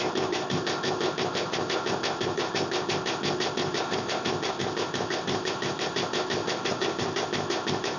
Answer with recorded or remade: remade